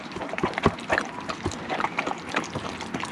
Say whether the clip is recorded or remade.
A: recorded